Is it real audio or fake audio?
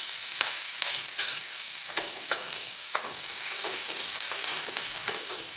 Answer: fake